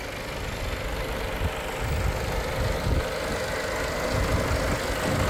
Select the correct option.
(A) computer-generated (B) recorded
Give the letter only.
B